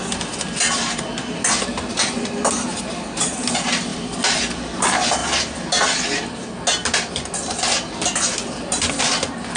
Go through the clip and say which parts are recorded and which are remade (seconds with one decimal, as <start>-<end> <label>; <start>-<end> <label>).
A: 0.0-9.6 recorded